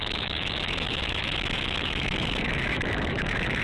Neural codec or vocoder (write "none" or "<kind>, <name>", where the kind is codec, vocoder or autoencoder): autoencoder, DAC-VAE